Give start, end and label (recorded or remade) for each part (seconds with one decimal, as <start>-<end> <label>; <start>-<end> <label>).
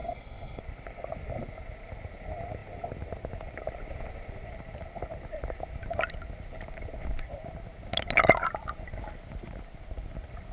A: 0.0-0.6 remade; 0.6-10.5 recorded